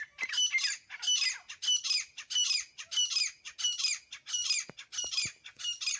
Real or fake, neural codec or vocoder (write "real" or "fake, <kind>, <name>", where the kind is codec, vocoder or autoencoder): real